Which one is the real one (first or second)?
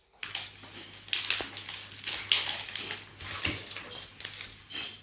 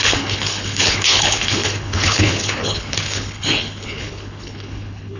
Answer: first